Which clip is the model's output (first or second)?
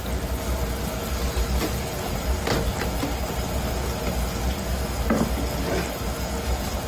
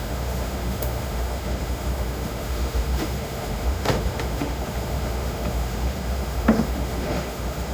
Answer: second